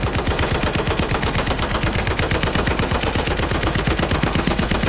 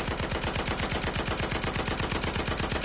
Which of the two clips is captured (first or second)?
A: second